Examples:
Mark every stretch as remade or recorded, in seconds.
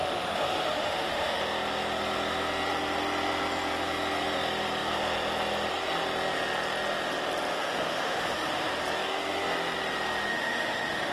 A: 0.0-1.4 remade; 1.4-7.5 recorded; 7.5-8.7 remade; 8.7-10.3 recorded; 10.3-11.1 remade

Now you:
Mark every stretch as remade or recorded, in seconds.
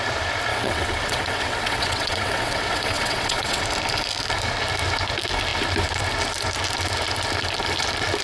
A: 0.0-0.5 recorded; 0.5-3.6 remade; 3.6-8.2 recorded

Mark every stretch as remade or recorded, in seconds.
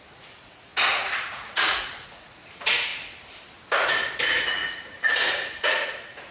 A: 0.0-2.9 remade; 2.9-4.4 recorded; 4.4-6.3 remade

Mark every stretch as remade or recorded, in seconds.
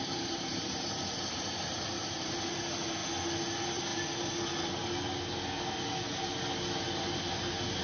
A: 0.0-3.0 remade; 3.0-3.5 recorded; 3.5-3.9 remade; 3.9-7.8 recorded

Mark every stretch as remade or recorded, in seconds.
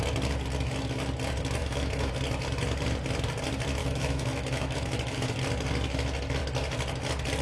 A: 0.0-1.6 recorded; 1.6-2.1 remade; 2.1-3.8 recorded; 3.8-5.4 remade; 5.4-7.4 recorded